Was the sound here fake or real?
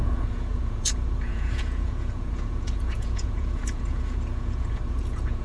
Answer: fake